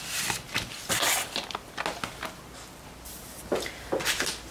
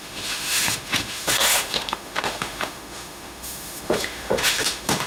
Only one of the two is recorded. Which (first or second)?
first